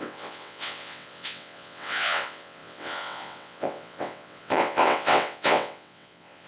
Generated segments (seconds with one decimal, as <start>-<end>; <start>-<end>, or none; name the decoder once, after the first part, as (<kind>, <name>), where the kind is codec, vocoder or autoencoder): 0.0-6.5 (vocoder, WaveNeXt)